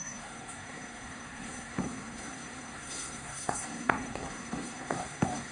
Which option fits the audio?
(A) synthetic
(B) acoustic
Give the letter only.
A